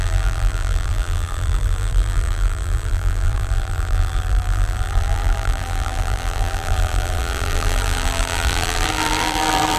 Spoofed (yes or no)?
yes